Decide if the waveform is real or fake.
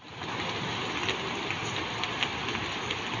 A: real